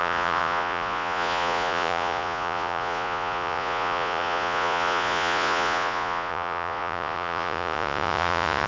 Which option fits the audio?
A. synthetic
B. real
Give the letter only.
A